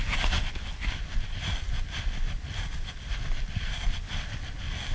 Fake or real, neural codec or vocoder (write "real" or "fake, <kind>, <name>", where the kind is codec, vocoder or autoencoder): real